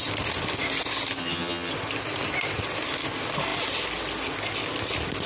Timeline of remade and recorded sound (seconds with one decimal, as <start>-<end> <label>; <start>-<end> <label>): 0.0-1.2 recorded; 1.2-1.7 remade; 1.7-5.3 recorded